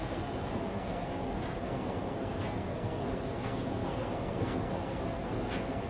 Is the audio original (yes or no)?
no